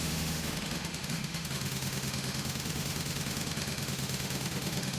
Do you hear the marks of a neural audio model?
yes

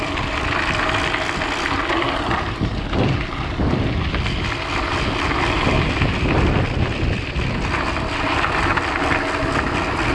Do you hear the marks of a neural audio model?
no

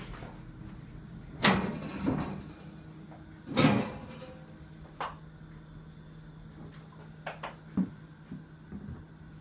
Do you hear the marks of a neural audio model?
no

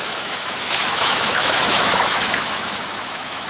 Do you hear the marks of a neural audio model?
yes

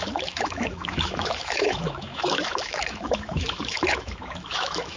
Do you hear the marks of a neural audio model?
yes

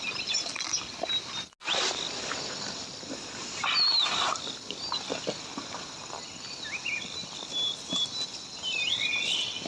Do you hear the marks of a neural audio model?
no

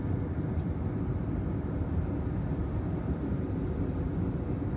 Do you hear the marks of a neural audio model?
no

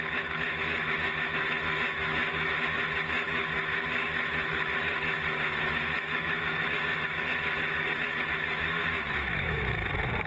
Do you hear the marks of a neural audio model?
yes